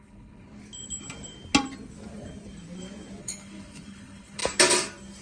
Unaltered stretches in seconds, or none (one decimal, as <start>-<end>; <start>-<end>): 0.6-3.2; 4.4-5.2